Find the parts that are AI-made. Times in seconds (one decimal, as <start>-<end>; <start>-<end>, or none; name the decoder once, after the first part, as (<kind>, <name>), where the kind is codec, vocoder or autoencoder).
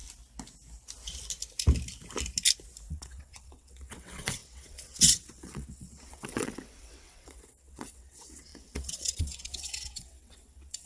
2.9-10.9 (vocoder, WaveNeXt)